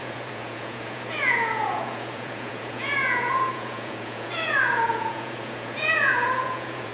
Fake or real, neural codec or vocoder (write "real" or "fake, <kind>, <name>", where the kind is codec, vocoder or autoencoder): fake, vocoder, Vocos